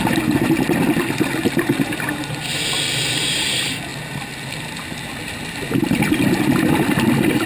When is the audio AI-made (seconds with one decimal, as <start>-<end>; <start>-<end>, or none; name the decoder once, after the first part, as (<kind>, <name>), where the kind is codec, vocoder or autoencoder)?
none